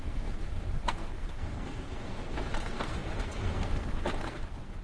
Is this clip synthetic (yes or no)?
yes